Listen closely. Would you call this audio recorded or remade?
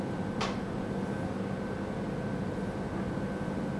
recorded